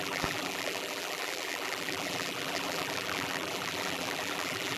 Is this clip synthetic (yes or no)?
yes